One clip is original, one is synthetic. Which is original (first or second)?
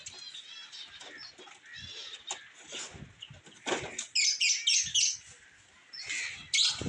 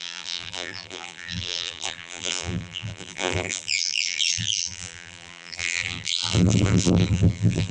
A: first